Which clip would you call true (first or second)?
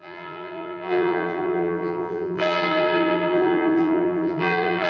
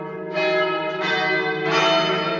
second